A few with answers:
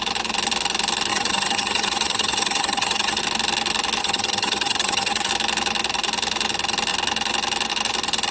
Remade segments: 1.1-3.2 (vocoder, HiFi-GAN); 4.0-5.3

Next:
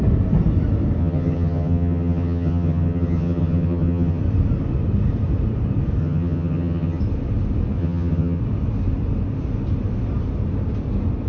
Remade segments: 1.0-4.2 (vocoder, HiFi-GAN); 6.0-7.0; 7.8-8.4

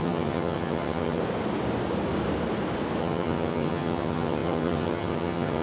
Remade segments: 0.0-1.2 (vocoder, HiFi-GAN); 3.0-5.6